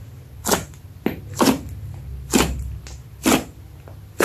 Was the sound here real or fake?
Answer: real